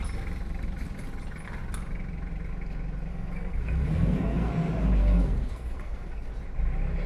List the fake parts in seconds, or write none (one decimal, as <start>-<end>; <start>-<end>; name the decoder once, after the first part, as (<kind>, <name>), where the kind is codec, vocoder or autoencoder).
3.1-4.5 (codec, SNAC); 5.0-6.3